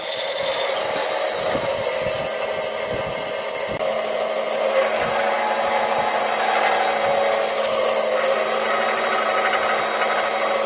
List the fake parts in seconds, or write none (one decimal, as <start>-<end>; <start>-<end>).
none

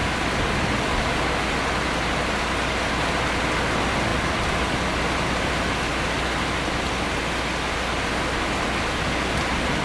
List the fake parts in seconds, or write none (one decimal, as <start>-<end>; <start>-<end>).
none

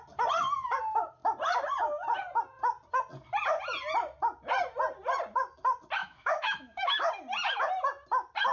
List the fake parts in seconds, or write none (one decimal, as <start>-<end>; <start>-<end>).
6.0-7.1

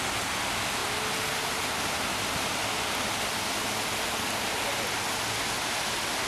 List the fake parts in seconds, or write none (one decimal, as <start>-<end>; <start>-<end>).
none